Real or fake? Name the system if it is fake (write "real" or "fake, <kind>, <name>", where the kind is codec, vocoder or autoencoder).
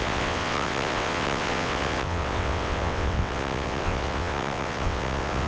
fake, vocoder, WaveNeXt